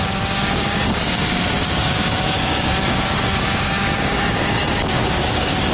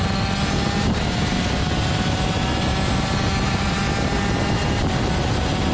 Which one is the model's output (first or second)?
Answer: first